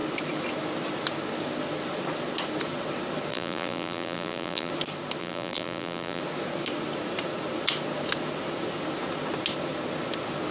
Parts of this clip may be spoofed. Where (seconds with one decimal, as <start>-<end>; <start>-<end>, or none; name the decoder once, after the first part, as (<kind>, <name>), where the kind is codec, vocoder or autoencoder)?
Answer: 3.3-4.7 (vocoder, BigVGAN v2); 5.2-6.2